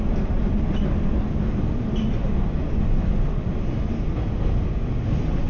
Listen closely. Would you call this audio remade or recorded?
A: recorded